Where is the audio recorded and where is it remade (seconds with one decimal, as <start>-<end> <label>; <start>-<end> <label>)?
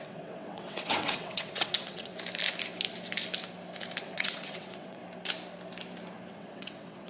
0.0-2.1 remade; 2.1-4.0 recorded; 4.0-5.0 remade; 5.0-6.3 recorded; 6.3-7.1 remade